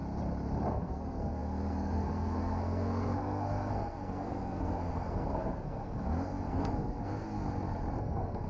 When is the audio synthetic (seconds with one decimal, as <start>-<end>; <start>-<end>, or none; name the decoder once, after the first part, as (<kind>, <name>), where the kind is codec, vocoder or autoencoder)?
0.7-7.4 (codec, SNAC); 8.0-8.5